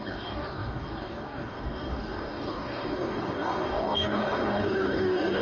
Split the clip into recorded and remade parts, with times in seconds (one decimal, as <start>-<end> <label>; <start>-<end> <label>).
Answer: 0.0-5.4 remade

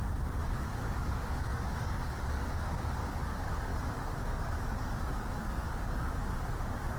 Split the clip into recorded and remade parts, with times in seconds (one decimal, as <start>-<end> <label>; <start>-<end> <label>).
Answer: 0.0-7.0 remade